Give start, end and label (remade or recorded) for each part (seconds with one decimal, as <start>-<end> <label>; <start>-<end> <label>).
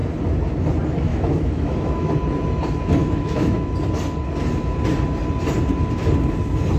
0.0-1.1 recorded; 1.1-2.1 remade; 2.1-3.0 recorded; 3.0-3.7 remade; 3.7-6.8 recorded